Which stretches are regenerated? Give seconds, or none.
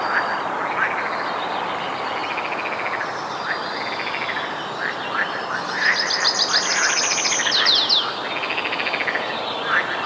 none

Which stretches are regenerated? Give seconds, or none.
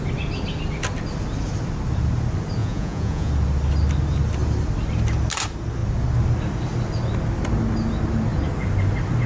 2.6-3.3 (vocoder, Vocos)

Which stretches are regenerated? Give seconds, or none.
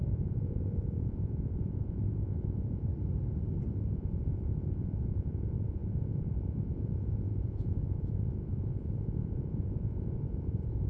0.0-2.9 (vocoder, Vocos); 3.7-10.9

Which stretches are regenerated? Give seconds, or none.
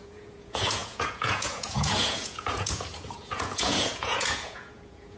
0.0-5.2 (vocoder, Vocos)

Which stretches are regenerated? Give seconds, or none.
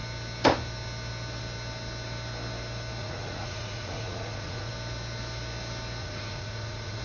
3.0-4.7 (vocoder, Vocos); 6.0-7.0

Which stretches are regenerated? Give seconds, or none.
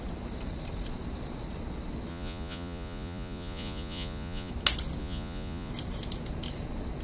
2.1-4.5 (vocoder, Vocos); 5.0-5.7